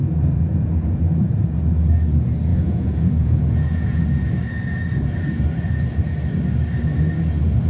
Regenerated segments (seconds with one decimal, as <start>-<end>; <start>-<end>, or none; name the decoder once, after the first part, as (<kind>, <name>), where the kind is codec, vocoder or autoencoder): 0.0-1.6 (vocoder, Vocos); 2.5-4.0